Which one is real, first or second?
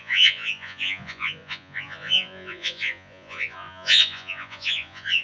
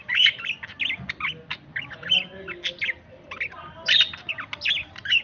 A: second